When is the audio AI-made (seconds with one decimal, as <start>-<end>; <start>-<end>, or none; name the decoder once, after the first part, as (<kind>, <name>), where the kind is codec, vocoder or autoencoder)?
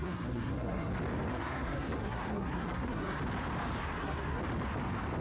0.0-0.9 (codec, SNAC); 1.3-3.2; 3.8-4.4